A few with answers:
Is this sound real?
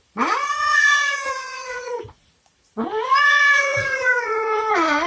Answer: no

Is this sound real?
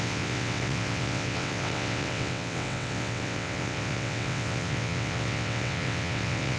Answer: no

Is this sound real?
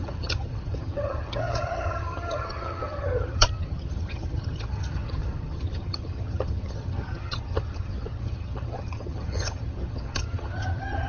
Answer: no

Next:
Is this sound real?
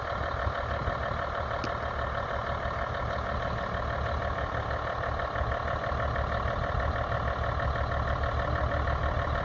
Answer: yes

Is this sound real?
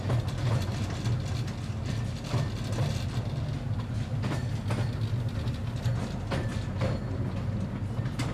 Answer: yes